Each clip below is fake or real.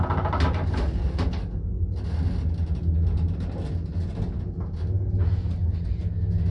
real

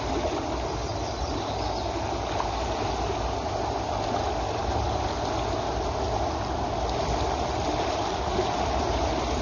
real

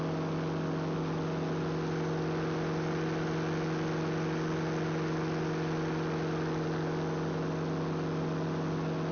real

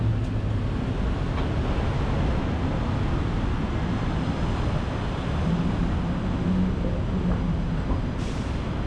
real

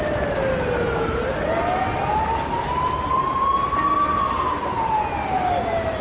real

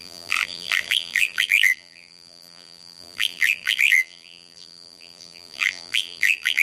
fake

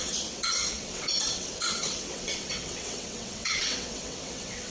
fake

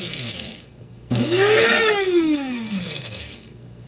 fake